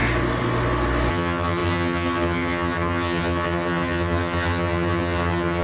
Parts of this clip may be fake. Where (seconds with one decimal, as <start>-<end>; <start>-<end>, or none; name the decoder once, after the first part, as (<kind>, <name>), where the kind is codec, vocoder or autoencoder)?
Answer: 1.1-5.6 (vocoder, HiFi-GAN)